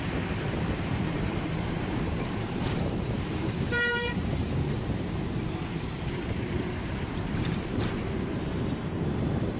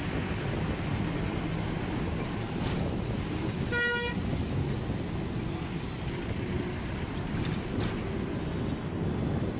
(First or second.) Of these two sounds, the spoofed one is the first